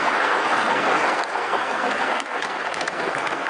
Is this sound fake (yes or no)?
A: yes